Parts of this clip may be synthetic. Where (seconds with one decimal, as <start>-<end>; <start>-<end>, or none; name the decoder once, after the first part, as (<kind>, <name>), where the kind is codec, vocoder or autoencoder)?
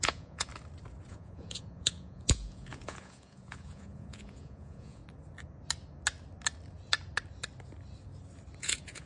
0.0-0.5 (vocoder, Vocos); 1.1-5.0; 8.6-9.1